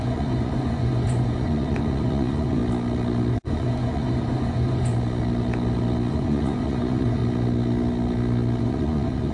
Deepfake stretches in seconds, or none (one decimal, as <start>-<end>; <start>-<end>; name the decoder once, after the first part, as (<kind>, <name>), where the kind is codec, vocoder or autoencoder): 0.0-2.6 (vocoder, Vocos); 3.3-4.9; 6.1-7.2; 8.6-9.3